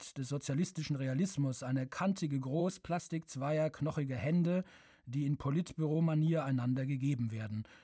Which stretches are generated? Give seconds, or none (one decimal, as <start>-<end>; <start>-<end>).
2.6-3.1